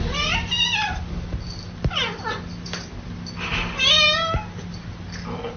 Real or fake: real